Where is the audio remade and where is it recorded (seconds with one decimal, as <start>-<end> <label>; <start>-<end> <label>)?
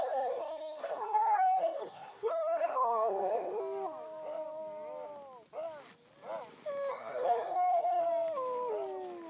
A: 0.0-3.6 remade; 3.6-6.9 recorded; 6.9-8.0 remade; 8.0-9.3 recorded